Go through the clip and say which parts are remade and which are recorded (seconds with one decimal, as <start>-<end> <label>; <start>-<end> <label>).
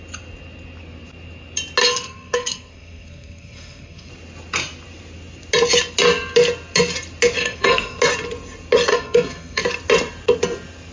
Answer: 0.0-1.8 recorded; 1.8-4.1 remade; 4.1-7.4 recorded; 7.4-8.0 remade; 8.0-8.9 recorded; 8.9-9.6 remade; 9.6-10.9 recorded